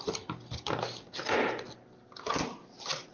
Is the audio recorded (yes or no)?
yes